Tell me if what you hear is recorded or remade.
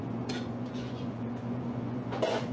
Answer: remade